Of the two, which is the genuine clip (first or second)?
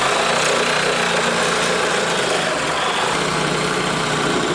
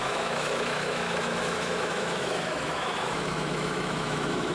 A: first